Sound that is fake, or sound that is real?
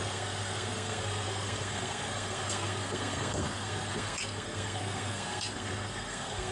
fake